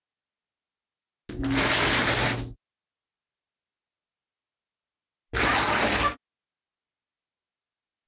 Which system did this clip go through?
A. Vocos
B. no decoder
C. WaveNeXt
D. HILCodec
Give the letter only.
B